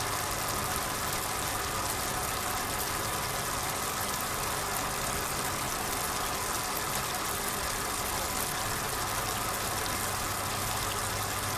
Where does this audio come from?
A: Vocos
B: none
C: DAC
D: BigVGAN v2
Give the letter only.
B